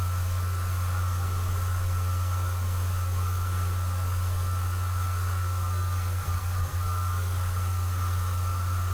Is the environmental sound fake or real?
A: fake